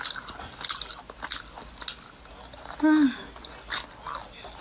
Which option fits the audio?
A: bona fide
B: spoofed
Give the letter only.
A